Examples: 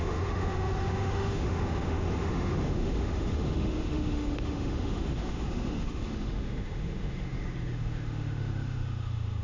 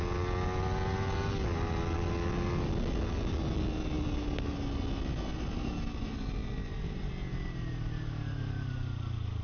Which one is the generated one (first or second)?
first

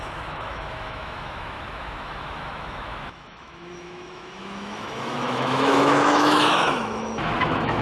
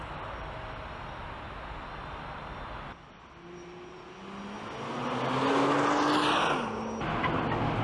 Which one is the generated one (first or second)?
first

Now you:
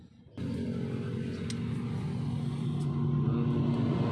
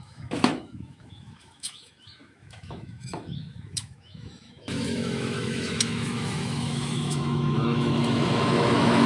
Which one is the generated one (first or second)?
second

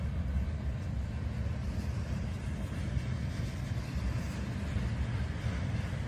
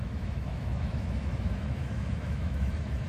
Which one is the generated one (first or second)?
second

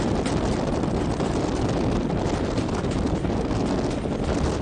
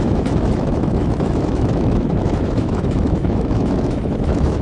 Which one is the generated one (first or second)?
second